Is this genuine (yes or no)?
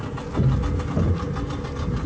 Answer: yes